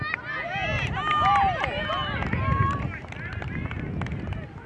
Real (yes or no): yes